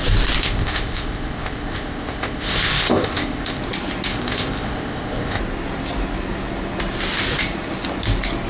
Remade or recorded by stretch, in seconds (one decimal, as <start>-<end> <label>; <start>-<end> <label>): 0.0-0.4 recorded; 0.4-3.6 remade; 3.6-4.1 recorded; 4.1-5.4 remade; 5.4-8.5 recorded